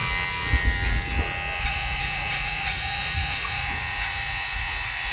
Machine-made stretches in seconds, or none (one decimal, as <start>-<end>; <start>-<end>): 1.6-5.1